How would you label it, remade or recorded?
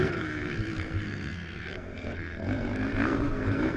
remade